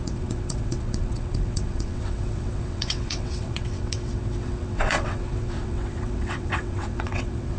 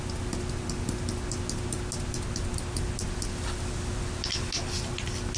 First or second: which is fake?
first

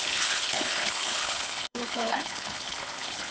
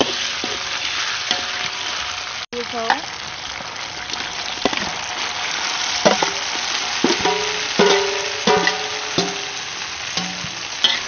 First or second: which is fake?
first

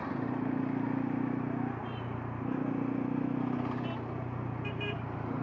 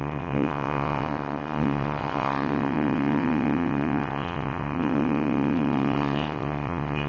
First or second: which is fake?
second